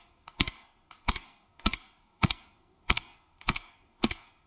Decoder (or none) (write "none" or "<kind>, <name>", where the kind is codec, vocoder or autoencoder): codec, SNAC